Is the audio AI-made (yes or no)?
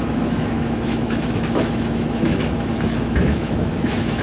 yes